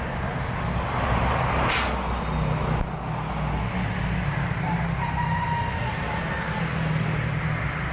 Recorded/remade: recorded